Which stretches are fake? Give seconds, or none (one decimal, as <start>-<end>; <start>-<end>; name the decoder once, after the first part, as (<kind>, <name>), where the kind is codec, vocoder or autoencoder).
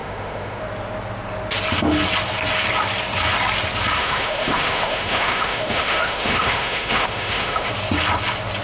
0.0-0.6 (autoencoder, DAC-VAE); 4.0-7.7